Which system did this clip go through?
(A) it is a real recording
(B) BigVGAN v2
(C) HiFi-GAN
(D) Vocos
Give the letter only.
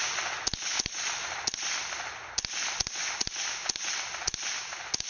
A